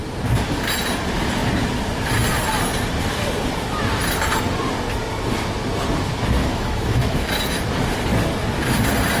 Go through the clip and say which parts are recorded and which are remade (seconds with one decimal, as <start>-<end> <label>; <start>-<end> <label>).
0.0-6.4 recorded; 6.4-7.6 remade; 7.6-9.2 recorded